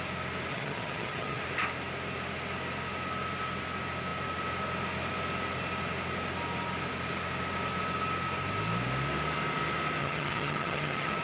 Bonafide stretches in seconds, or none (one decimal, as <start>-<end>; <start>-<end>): 0.0-0.5; 1.4-10.0